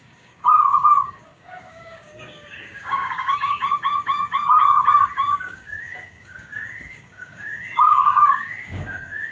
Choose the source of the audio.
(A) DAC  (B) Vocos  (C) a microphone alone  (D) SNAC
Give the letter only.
A